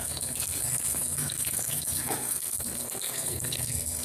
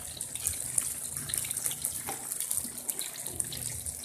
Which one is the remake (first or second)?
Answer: first